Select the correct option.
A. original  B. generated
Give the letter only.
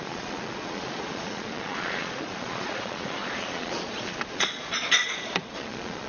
B